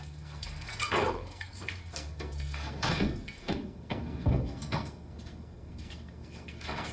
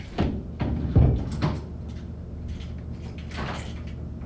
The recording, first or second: second